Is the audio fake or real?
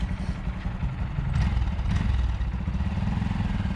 real